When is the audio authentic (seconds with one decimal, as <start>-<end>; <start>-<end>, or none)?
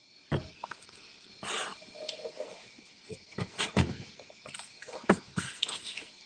0.0-0.5; 1.3-2.3